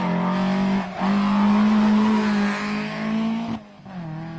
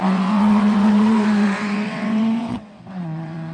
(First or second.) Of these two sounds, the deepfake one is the second